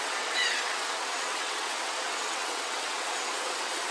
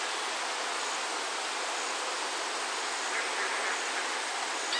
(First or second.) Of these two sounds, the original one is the second